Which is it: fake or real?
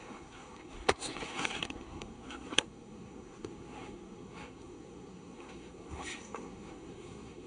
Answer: fake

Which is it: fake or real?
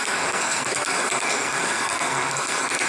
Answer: fake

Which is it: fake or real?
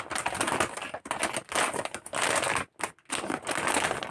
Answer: real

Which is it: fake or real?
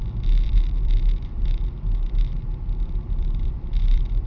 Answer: fake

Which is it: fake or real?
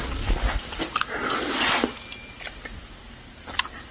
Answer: real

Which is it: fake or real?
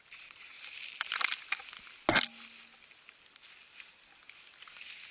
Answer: real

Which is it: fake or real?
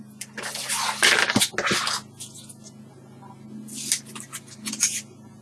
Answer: real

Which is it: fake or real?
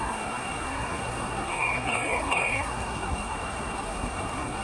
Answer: fake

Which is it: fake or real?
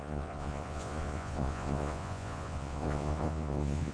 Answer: fake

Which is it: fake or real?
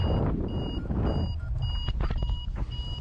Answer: real